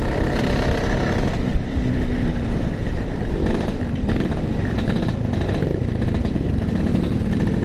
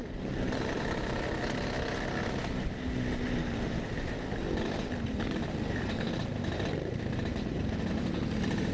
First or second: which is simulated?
first